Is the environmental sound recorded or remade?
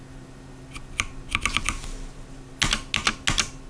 recorded